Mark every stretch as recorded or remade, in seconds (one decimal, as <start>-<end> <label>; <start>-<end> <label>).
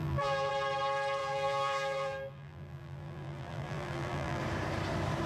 0.0-0.5 remade; 0.5-1.2 recorded; 1.2-4.4 remade; 4.4-5.3 recorded